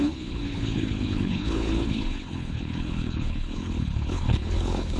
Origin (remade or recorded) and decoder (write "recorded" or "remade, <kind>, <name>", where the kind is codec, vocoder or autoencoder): remade, codec, HILCodec